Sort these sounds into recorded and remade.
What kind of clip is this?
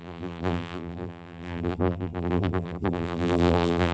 remade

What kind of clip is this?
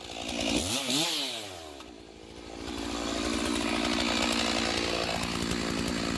recorded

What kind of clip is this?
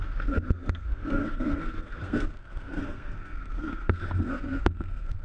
remade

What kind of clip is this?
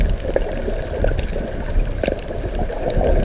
recorded